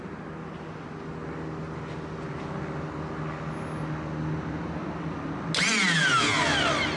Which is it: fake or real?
real